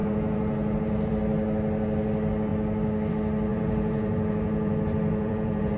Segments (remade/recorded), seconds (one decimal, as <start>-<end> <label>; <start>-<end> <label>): 0.0-1.1 remade; 1.1-3.5 recorded; 3.5-5.8 remade